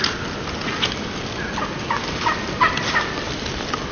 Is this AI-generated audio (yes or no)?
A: no